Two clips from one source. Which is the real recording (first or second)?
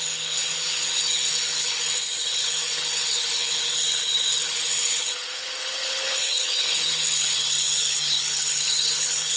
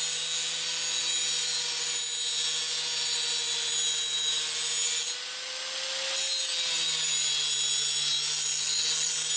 second